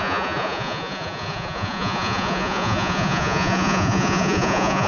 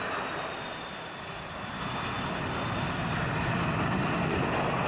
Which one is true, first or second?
second